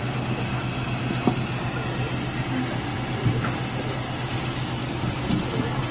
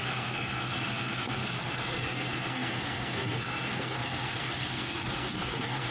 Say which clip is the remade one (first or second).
second